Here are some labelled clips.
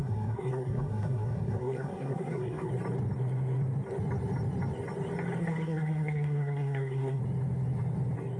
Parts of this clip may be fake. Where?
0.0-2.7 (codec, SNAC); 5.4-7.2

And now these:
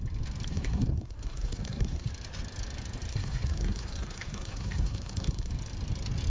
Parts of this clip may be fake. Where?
0.5-2.1 (codec, SNAC); 3.1-5.5

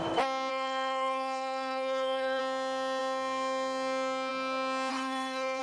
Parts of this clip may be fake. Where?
0.5-2.4 (codec, SNAC); 4.9-5.6

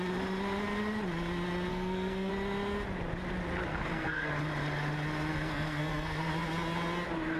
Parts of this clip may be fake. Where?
1.7-2.3 (codec, SNAC); 3.7-4.3; 5.3-6.3

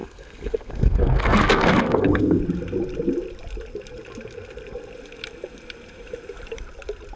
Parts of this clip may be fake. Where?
0.0-2.4 (codec, SNAC)